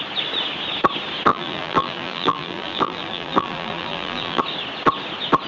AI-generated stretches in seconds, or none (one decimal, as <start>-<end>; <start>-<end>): 1.3-4.4